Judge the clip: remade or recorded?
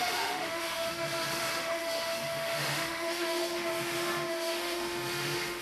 remade